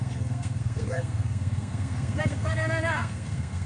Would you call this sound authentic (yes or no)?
no